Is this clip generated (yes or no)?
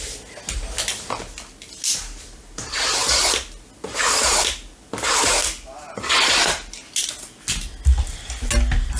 no